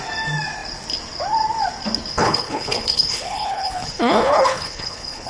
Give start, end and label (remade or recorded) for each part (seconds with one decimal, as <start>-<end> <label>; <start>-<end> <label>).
0.0-2.1 recorded; 2.1-5.3 remade